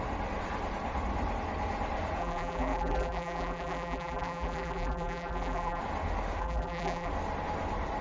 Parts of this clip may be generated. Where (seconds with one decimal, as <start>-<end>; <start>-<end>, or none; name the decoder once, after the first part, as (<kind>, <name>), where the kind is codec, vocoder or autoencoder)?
2.2-5.8 (vocoder, BigVGAN v2); 6.4-7.1